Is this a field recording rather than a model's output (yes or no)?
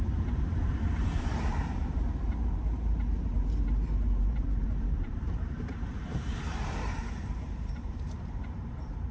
no